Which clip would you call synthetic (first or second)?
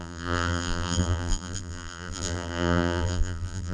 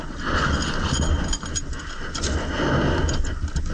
first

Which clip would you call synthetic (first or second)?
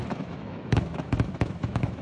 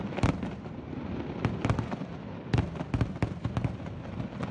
first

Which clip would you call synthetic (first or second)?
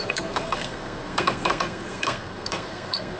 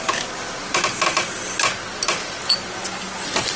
first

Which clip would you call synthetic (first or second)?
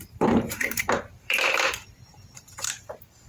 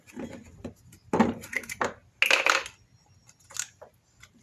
first